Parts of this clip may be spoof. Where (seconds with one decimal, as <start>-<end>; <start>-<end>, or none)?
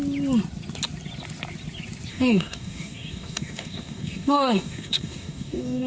2.1-5.9